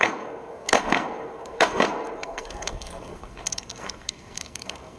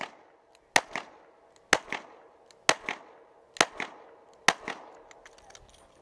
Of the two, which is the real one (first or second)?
second